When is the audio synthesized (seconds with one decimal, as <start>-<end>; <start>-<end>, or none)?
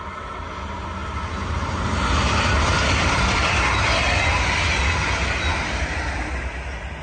none